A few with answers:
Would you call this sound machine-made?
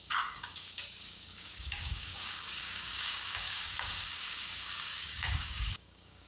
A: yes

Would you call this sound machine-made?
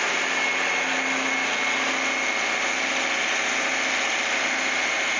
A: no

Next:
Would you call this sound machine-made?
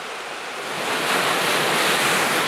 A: no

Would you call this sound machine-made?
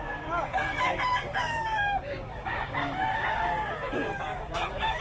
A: yes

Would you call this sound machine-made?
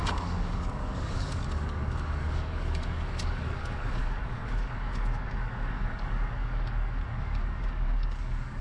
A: yes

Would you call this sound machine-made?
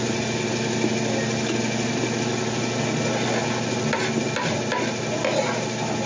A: no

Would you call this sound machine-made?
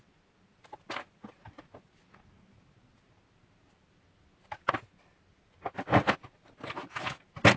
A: no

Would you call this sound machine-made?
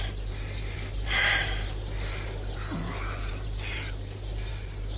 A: no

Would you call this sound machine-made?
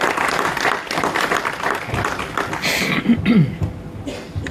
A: no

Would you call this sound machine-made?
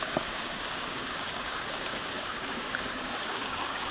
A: yes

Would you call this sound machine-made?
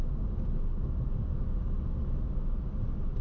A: no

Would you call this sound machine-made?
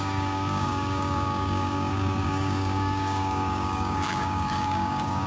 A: yes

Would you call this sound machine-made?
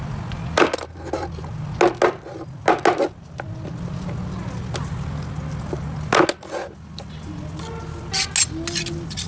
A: no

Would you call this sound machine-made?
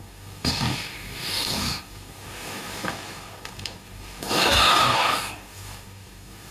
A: yes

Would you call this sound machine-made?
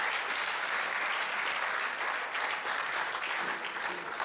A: no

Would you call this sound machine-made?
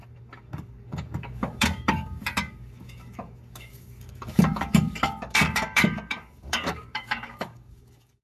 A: yes